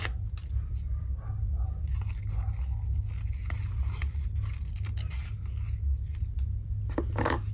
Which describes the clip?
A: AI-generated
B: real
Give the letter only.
B